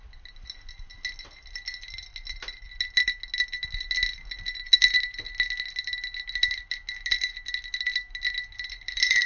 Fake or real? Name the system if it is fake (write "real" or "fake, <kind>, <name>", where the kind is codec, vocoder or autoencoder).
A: real